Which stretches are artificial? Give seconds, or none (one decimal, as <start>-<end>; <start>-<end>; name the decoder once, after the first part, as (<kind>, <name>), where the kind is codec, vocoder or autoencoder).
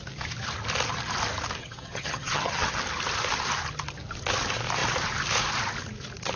1.6-2.8 (vocoder, HiFi-GAN)